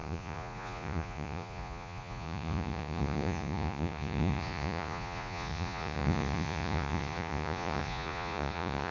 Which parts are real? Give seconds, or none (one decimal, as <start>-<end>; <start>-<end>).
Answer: none